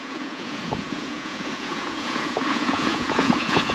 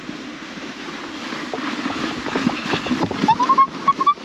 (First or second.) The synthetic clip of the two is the first